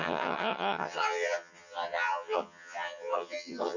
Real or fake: fake